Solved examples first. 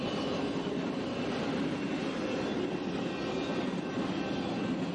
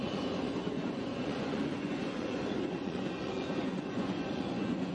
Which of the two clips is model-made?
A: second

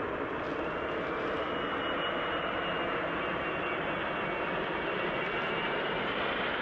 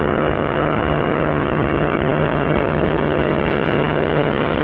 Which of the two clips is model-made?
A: second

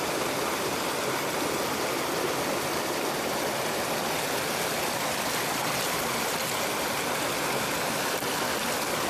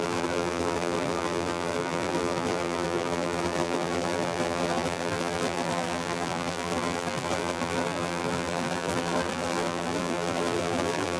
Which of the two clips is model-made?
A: second